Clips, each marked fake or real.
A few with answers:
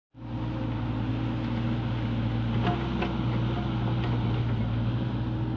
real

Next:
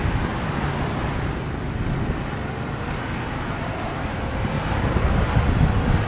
real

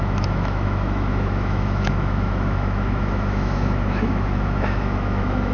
fake